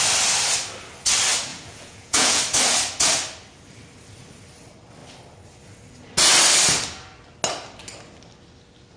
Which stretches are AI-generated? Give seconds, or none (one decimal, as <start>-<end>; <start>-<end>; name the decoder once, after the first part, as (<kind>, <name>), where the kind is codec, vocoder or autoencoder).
1.5-2.4 (vocoder, Vocos)